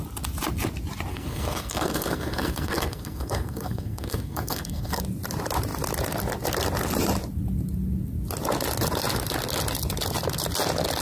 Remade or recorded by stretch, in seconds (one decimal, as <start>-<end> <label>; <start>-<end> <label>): 0.0-1.1 recorded; 1.1-5.0 remade; 5.0-11.0 recorded